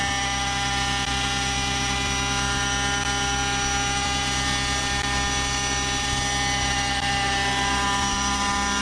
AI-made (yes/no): no